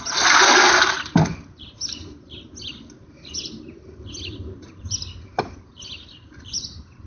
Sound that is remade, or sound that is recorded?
recorded